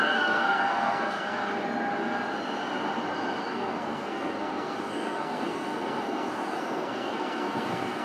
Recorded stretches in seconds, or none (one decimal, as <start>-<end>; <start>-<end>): 1.4-3.4